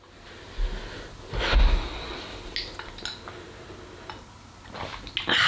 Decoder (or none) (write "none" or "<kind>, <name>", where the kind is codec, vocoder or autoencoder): none